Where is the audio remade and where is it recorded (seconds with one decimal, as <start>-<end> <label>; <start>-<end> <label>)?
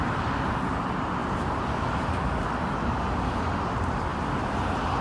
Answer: 0.0-4.1 recorded; 4.1-4.6 remade; 4.6-5.0 recorded